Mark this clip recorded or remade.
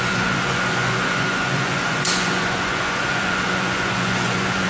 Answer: remade